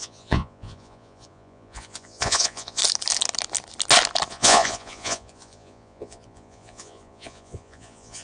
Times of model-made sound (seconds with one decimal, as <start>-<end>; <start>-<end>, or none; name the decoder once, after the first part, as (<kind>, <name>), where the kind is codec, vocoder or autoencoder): 0.0-2.8 (vocoder, Vocos); 4.3-8.2